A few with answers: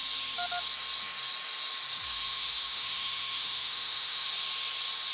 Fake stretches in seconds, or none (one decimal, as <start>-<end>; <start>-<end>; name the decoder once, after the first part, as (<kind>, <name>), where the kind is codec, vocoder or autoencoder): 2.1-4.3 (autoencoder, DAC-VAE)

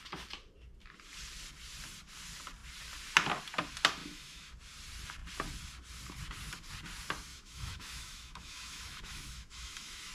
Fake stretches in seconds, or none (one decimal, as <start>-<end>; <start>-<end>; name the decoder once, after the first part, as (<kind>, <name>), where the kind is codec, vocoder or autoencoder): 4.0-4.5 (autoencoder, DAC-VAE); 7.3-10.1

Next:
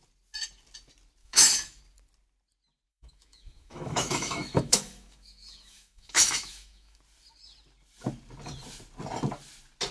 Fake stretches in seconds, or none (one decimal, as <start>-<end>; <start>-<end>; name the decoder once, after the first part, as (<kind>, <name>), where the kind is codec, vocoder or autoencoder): 1.2-1.8 (autoencoder, DAC-VAE); 2.9-7.0

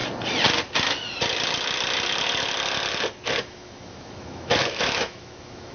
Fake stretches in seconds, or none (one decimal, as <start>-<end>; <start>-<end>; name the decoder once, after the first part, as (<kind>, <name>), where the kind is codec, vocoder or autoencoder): 3.4-5.7 (autoencoder, DAC-VAE)